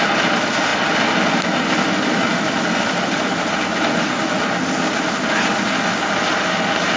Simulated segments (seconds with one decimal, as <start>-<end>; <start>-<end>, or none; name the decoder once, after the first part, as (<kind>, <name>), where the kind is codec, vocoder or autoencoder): none